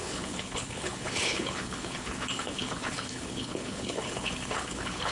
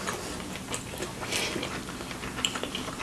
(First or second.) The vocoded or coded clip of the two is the first